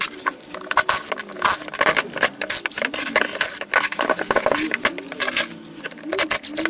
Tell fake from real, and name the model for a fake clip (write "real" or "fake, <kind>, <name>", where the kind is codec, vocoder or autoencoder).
real